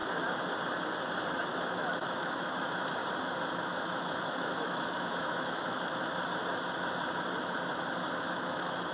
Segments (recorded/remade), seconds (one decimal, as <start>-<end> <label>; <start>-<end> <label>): 0.0-1.5 recorded; 1.5-3.0 remade; 3.0-3.6 recorded; 3.6-6.0 remade; 6.0-8.2 recorded; 8.2-8.9 remade